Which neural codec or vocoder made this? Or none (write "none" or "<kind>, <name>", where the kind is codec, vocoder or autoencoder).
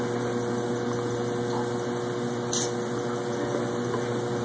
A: none